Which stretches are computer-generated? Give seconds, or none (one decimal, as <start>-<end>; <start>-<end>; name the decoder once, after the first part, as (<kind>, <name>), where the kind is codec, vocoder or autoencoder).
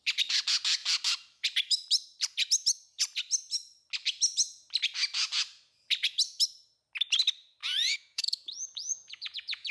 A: 7.6-9.7 (vocoder, Vocos)